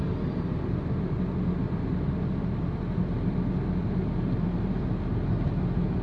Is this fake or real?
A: real